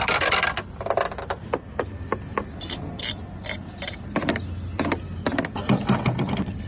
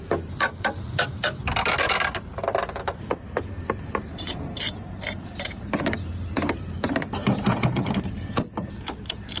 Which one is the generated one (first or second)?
second